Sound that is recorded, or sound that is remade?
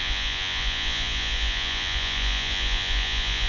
remade